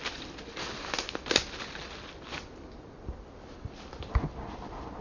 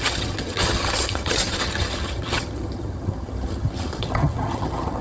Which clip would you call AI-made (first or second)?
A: second